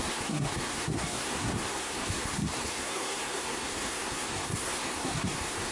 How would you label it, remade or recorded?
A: remade